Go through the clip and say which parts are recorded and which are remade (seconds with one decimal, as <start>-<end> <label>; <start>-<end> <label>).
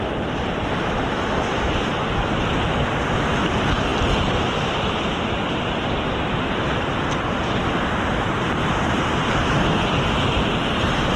0.0-11.2 recorded